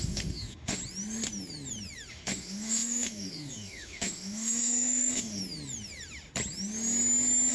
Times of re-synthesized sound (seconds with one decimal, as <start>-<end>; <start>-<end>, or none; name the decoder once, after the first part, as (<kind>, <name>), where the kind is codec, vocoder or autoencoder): 0.0-0.8 (autoencoder, DAC-VAE); 2.1-5.4